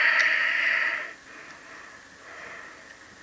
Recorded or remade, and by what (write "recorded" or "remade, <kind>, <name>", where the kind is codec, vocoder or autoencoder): recorded